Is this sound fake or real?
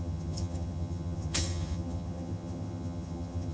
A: fake